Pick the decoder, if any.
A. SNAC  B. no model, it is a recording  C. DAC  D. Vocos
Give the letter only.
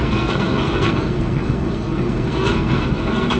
A